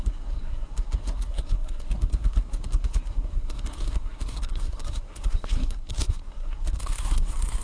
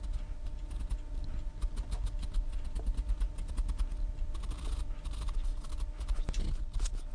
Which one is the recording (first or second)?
second